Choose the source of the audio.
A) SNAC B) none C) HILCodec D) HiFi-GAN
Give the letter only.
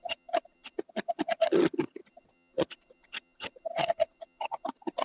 D